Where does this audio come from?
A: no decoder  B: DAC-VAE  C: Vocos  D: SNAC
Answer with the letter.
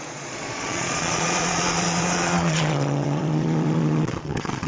C